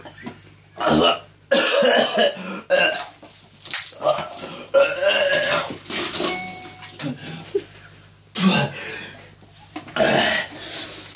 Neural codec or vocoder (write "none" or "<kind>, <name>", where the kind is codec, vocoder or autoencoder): none